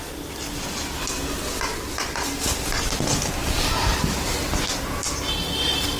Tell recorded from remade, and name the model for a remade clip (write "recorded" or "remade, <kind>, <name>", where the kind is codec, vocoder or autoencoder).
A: recorded